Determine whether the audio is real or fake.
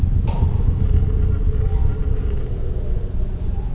real